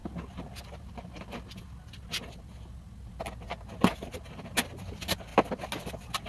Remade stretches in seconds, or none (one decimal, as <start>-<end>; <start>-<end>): none